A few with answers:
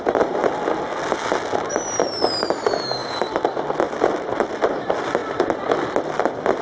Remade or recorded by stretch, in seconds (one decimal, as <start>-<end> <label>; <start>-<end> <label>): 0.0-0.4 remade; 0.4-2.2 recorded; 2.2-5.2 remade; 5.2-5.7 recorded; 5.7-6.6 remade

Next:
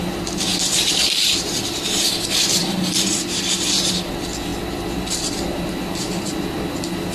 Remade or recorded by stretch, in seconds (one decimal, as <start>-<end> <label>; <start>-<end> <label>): 0.0-0.5 recorded; 0.5-1.5 remade; 1.5-2.6 recorded; 2.6-3.9 remade; 3.9-7.1 recorded

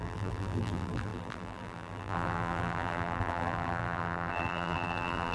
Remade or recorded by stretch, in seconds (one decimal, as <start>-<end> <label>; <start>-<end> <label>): 0.0-5.3 remade